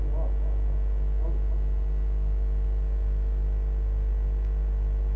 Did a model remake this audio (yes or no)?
no